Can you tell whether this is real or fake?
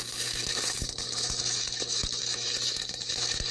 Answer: fake